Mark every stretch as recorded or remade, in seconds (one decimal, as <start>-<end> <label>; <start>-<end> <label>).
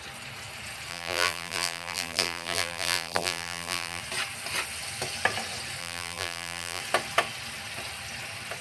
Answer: 0.0-0.9 recorded; 0.9-4.0 remade; 4.0-5.8 recorded; 5.8-6.8 remade; 6.8-8.6 recorded